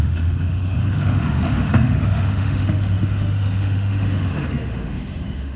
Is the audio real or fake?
fake